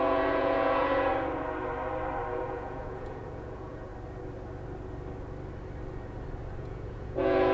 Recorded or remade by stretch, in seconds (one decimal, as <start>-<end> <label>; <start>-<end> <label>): 0.0-1.1 remade; 1.1-2.3 recorded; 2.3-3.9 remade; 3.9-6.6 recorded; 6.6-7.5 remade